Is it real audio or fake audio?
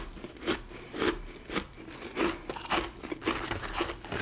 real